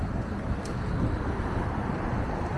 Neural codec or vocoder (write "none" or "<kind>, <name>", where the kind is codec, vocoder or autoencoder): none